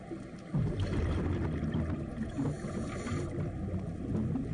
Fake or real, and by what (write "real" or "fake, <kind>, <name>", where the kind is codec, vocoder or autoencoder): real